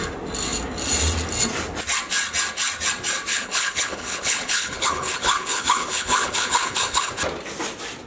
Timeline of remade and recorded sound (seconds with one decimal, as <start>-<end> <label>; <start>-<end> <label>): 0.0-3.3 recorded; 3.3-7.1 remade; 7.1-8.1 recorded